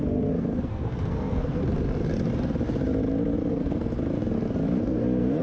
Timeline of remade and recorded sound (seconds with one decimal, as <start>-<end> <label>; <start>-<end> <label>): 0.0-1.6 remade; 1.6-3.5 recorded; 3.5-3.9 remade; 3.9-4.8 recorded; 4.8-5.4 remade